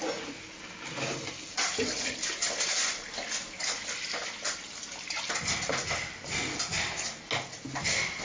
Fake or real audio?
real